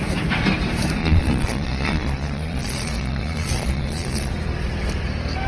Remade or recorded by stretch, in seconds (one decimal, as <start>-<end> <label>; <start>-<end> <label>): 0.0-1.0 recorded; 1.0-4.3 remade; 4.3-5.5 recorded